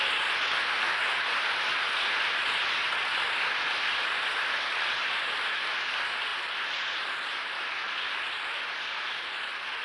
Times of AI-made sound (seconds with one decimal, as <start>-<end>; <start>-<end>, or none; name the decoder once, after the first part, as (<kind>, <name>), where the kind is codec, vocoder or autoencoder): none